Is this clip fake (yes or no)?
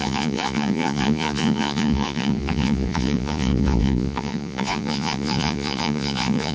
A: yes